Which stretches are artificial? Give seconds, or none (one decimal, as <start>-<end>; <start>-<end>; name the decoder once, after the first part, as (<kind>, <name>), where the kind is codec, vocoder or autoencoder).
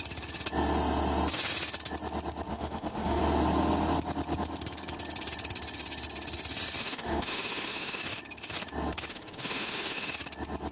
2.5-3.2 (autoencoder, DAC-VAE); 6.8-8.0; 9.1-10.1